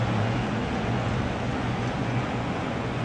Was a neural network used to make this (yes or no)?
yes